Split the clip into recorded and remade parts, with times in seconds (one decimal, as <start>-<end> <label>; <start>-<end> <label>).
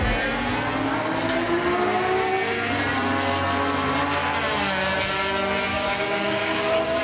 0.0-5.7 recorded; 5.7-7.0 remade